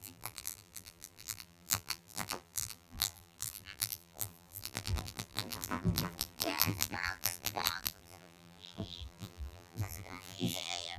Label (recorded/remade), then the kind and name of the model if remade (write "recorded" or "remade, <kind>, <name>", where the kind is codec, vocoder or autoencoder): remade, vocoder, BigVGAN v2